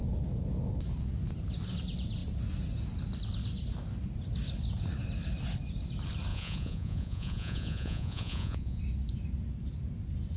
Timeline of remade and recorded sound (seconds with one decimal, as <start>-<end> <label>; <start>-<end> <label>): 0.0-6.3 recorded; 6.3-8.8 remade; 8.8-10.4 recorded